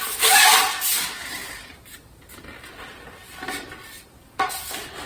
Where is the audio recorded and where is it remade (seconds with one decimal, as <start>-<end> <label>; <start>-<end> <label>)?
0.0-5.1 recorded